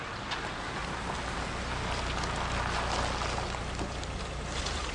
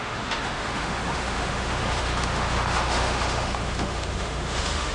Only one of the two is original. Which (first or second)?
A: first